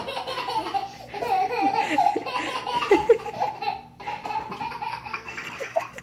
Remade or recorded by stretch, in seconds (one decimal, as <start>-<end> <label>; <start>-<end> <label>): 0.0-4.9 recorded; 4.9-6.0 remade